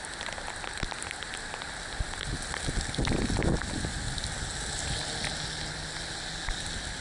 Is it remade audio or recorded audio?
recorded